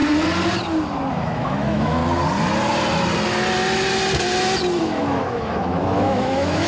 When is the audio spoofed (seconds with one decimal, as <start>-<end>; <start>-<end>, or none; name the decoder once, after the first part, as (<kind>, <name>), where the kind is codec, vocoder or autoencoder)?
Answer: 1.1-2.0 (autoencoder, DAC-VAE); 4.8-6.7